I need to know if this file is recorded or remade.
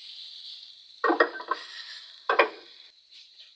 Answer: recorded